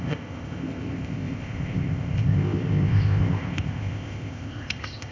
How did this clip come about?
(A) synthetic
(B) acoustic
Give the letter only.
A